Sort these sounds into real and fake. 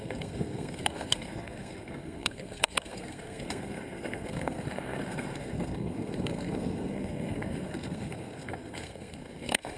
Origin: fake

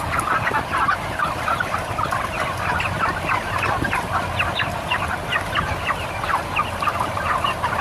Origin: fake